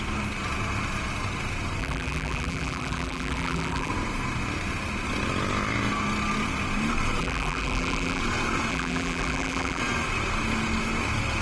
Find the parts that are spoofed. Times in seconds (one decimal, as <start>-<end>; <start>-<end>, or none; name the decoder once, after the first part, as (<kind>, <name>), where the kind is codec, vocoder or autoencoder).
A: 1.8-3.9 (vocoder, BigVGAN v2); 7.2-8.2; 8.7-9.8